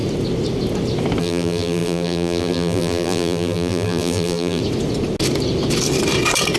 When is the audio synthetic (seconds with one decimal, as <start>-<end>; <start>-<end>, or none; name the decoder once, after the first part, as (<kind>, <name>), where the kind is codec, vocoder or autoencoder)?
1.2-4.6 (vocoder, BigVGAN v2)

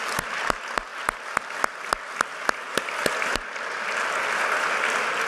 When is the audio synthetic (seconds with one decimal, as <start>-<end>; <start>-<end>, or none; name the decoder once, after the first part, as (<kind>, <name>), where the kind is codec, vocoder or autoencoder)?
none

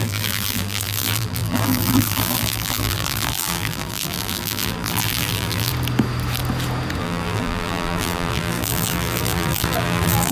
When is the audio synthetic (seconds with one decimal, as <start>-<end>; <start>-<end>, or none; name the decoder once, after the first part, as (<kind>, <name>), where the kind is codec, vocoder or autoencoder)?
0.0-5.7 (vocoder, BigVGAN v2); 7.0-10.3

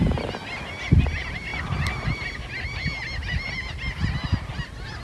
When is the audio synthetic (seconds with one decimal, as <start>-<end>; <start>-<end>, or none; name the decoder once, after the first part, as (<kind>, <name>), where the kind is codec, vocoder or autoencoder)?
none

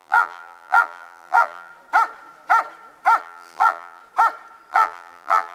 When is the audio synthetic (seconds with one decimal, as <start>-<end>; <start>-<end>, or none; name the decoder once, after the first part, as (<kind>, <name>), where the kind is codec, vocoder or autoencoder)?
0.0-1.7 (vocoder, BigVGAN v2); 3.2-4.0; 4.7-5.5

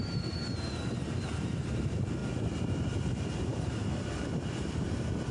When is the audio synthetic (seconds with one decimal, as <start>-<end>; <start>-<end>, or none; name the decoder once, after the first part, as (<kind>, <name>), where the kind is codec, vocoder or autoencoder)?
0.0-5.3 (vocoder, BigVGAN v2)

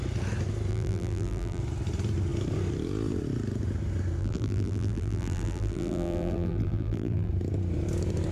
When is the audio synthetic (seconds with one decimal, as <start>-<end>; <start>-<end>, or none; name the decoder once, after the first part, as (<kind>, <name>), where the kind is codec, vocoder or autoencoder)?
0.7-1.6 (vocoder, BigVGAN v2); 4.2-7.3